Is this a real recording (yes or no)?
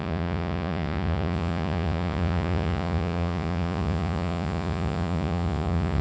no